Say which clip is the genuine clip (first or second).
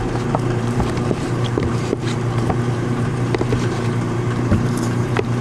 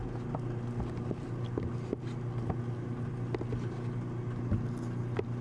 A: second